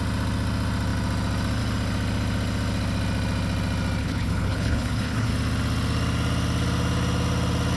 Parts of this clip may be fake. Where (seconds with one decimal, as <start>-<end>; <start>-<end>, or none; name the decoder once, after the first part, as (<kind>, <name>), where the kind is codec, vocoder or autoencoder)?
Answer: 4.0-5.3 (codec, HILCodec)